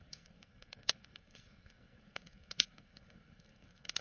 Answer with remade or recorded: remade